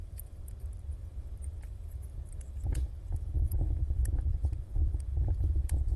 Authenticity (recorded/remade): remade